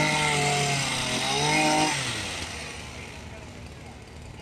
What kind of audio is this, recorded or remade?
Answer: recorded